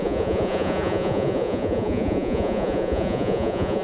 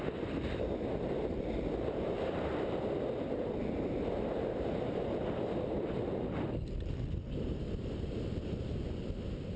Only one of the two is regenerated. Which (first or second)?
first